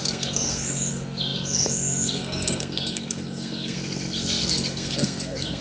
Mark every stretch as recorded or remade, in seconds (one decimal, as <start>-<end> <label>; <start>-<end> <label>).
0.0-5.6 remade